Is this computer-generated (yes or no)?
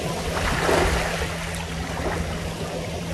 no